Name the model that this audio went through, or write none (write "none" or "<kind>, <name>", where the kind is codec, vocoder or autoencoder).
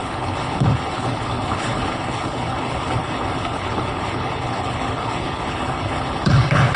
codec, HILCodec